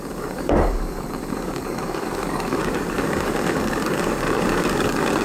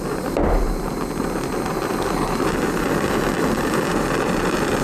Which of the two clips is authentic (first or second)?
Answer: second